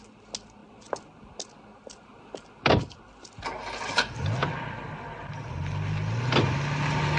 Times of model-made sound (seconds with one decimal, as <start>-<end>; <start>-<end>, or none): none